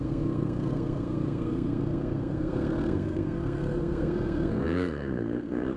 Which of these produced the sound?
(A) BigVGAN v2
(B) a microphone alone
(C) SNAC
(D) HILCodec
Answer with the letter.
C